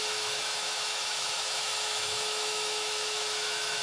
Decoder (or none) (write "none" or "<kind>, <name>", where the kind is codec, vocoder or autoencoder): autoencoder, DAC-VAE